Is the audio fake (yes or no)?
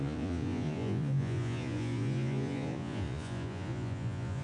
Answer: yes